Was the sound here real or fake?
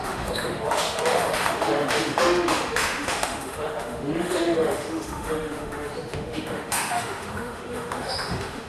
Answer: fake